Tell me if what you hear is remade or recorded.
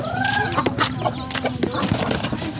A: recorded